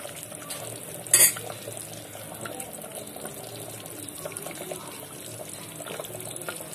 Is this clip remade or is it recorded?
recorded